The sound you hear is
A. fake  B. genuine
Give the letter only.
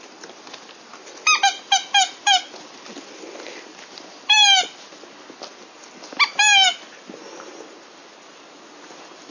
B